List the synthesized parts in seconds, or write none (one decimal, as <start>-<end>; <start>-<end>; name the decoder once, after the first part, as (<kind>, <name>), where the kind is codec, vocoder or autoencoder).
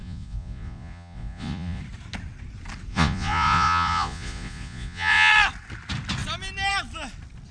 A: 0.0-1.8 (vocoder, Vocos); 2.9-5.3